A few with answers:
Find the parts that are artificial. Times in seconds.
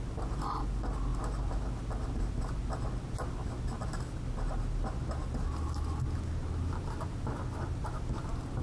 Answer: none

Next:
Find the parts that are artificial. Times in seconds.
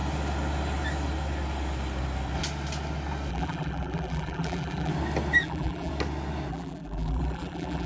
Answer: 3.3-4.9 (vocoder, BigVGAN v2); 5.4-5.9; 6.5-7.9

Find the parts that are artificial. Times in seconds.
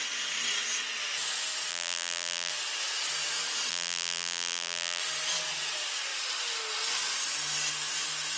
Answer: 1.7-2.5 (vocoder, BigVGAN v2); 3.7-5.0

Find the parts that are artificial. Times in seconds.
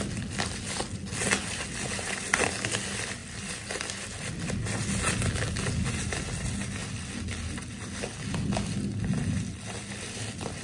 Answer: 6.8-7.7 (vocoder, BigVGAN v2)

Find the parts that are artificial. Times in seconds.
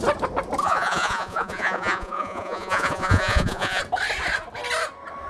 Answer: 0.6-3.8 (vocoder, Vocos)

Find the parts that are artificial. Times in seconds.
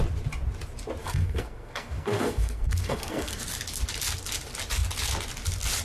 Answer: 1.0-3.4 (codec, SNAC)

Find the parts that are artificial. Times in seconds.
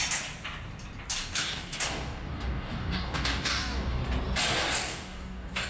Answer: 1.2-4.0 (codec, DAC); 4.8-5.7